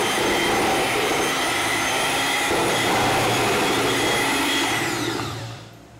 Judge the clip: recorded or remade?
remade